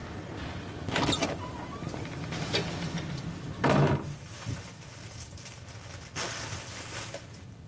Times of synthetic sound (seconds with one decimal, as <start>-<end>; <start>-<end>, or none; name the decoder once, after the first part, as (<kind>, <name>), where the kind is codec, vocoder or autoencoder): none